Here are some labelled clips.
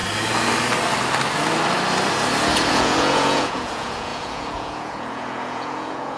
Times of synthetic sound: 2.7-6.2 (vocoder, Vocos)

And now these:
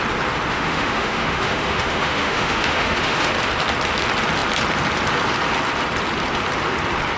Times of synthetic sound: 0.5-3.3 (autoencoder, DAC-VAE)

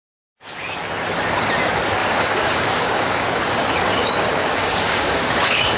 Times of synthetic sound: 2.0-5.8 (codec, DAC)

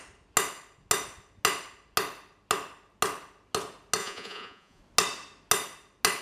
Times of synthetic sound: 4.0-4.8 (vocoder, Vocos)

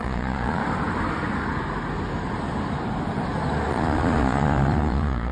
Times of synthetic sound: 0.0-0.6 (vocoder, Vocos); 3.7-5.3

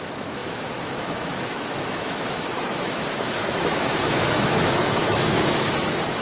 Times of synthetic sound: 0.0-6.2 (autoencoder, DAC-VAE)

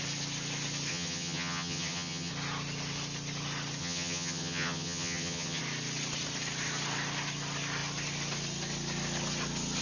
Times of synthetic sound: 0.9-2.3 (vocoder, HiFi-GAN); 3.8-5.6

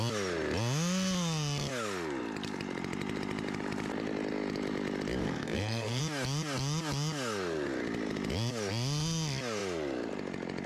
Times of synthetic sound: 5.2-6.0 (codec, SNAC)